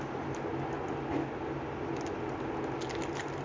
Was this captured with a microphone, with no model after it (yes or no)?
yes